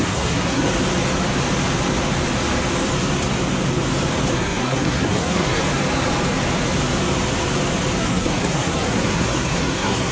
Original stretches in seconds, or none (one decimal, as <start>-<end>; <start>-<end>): 0.7-4.3; 5.6-8.0